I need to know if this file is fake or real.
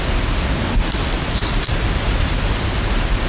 real